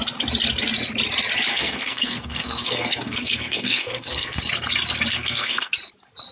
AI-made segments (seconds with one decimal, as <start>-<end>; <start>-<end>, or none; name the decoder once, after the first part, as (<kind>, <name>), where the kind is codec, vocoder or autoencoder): 1.5-4.4 (codec, SNAC); 5.1-5.7